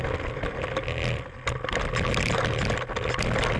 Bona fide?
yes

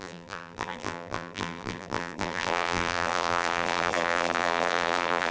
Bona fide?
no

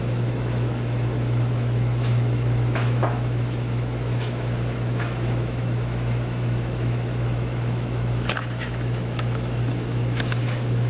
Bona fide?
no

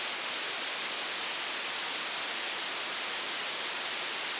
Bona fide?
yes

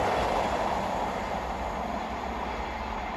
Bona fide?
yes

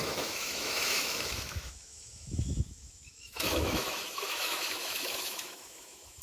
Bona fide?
no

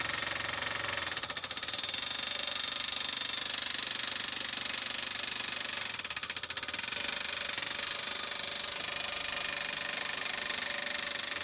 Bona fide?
yes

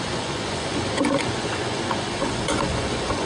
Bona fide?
no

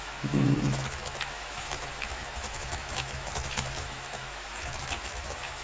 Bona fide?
no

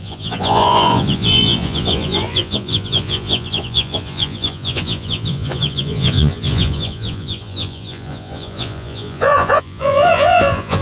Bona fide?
no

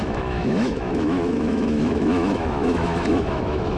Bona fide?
no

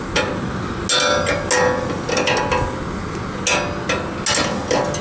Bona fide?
yes